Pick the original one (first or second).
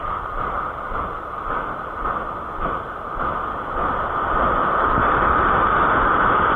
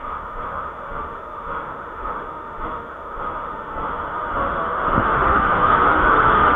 first